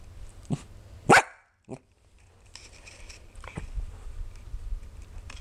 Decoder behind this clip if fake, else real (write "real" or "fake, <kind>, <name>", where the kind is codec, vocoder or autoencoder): real